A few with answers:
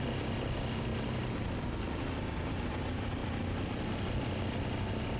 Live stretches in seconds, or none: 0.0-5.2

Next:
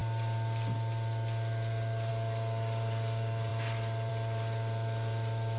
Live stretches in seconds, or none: 0.0-5.6

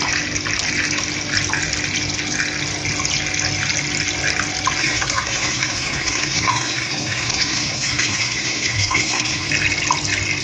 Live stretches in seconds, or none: 0.0-4.8; 9.5-10.4

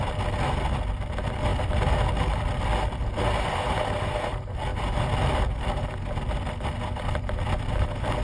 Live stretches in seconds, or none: 0.0-8.2

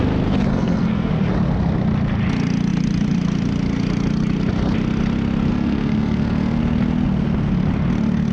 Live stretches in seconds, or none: 0.0-0.5; 1.1-5.5; 6.6-8.3

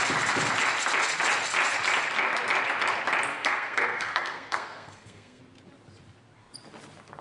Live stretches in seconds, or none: 0.0-3.3; 5.4-7.2

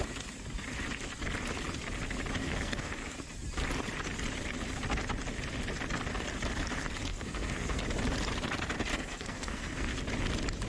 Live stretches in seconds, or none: 0.0-2.4; 2.9-7.1; 7.8-8.9; 10.0-10.7

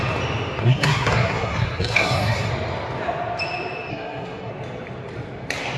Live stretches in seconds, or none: 0.0-0.6; 2.5-3.9; 4.5-5.8